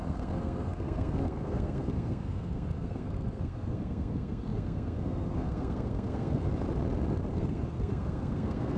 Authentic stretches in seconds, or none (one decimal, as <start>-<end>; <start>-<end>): 6.5-7.3